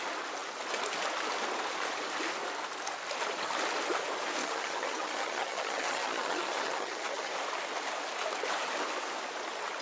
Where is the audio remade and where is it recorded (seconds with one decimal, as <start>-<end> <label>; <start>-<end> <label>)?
0.0-4.4 recorded; 4.4-7.3 remade; 7.3-9.8 recorded